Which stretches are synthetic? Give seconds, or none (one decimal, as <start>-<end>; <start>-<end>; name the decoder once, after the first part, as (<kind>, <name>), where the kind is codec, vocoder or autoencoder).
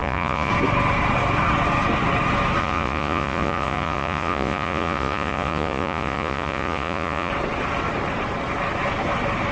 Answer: 0.0-0.5 (vocoder, Vocos); 2.6-7.3